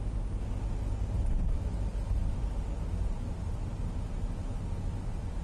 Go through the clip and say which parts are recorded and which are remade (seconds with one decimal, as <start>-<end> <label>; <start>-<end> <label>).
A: 0.0-5.4 recorded